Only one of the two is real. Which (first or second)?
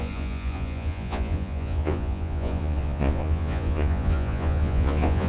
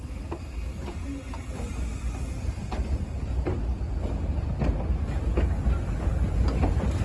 second